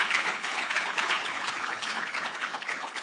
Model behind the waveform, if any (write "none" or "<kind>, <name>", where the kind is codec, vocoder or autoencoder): codec, HILCodec